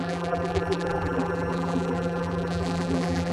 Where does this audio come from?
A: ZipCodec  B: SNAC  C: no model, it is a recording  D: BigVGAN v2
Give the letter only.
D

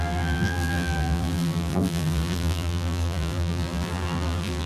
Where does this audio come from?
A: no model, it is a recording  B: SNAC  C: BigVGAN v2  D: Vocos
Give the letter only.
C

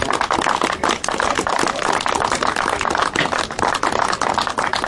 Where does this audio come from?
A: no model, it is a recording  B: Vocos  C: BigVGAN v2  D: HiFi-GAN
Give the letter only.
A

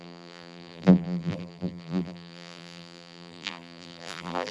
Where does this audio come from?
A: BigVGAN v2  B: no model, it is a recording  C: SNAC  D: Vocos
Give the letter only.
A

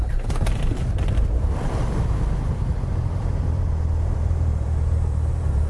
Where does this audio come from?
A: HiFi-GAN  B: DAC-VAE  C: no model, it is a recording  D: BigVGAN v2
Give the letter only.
D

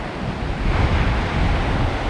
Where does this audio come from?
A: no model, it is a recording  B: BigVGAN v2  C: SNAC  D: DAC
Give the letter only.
A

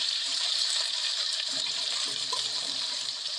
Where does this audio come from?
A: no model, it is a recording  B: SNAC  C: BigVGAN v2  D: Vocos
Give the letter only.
C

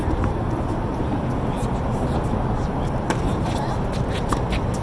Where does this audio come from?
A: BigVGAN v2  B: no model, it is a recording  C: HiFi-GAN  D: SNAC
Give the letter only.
B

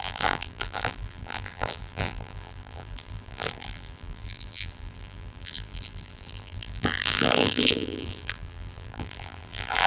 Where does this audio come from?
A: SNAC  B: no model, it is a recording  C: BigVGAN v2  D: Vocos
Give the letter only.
C